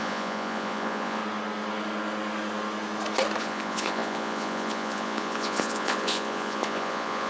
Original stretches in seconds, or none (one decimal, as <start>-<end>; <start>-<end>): 1.2-3.4